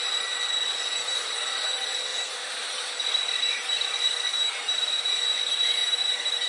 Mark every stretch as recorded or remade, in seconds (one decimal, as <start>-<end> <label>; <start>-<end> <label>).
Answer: 0.0-2.1 recorded; 2.1-2.9 remade; 2.9-4.3 recorded; 4.3-5.2 remade; 5.2-5.8 recorded; 5.8-6.5 remade